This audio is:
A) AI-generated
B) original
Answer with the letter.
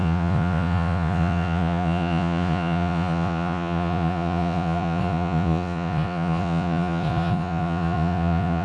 A